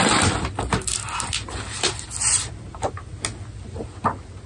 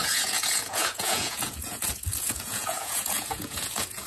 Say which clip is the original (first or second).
first